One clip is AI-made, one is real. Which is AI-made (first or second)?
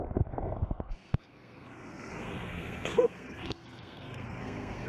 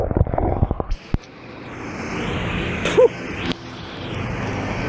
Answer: first